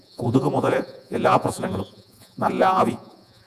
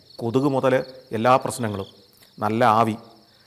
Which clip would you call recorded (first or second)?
second